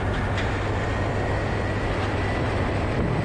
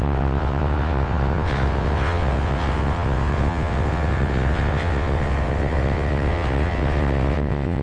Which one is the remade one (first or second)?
second